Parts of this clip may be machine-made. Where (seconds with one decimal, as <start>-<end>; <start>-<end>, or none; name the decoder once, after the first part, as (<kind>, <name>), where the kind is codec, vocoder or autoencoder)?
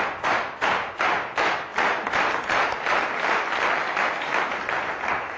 none